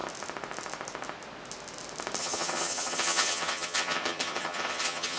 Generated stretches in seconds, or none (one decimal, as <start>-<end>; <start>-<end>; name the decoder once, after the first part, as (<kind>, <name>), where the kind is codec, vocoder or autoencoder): 2.2-5.2 (vocoder, HiFi-GAN)